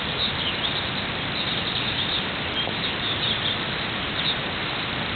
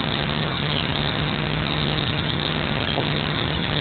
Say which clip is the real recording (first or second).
first